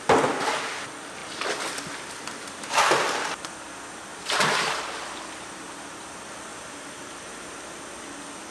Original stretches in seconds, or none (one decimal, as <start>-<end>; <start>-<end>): 0.0-4.1; 5.6-6.5; 7.4-8.5